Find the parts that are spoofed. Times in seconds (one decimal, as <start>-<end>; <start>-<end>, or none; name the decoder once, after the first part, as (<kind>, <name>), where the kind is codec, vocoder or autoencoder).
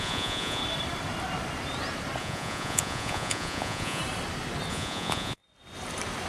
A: 0.0-0.6 (vocoder, Vocos); 2.2-4.0; 4.7-5.4